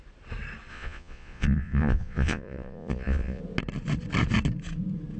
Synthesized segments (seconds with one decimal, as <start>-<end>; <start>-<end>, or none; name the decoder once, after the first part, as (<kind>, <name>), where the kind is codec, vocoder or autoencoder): 0.7-3.4 (vocoder, Vocos)